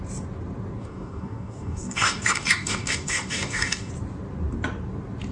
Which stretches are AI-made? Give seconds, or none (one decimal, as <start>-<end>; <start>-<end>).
0.8-3.9

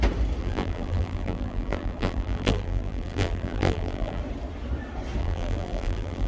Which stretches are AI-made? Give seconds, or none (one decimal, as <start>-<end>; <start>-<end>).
0.4-4.2; 5.2-6.3

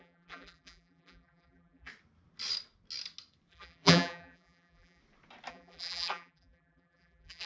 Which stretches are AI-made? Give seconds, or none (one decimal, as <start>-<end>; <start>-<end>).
0.0-1.9; 3.5-5.0; 5.5-7.5

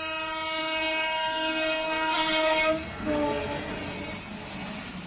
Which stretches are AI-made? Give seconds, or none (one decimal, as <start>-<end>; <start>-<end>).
0.6-3.7

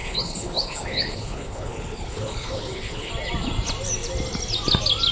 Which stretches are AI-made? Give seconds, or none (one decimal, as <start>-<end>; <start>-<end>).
0.0-3.1

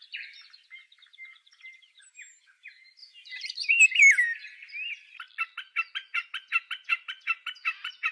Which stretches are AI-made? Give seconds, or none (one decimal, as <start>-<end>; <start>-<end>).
3.0-3.8

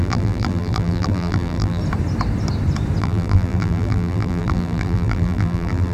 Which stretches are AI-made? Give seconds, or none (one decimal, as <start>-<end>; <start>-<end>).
0.0-1.8; 3.0-5.9

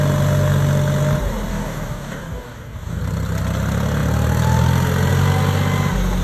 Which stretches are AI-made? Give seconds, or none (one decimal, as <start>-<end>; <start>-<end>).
1.5-3.0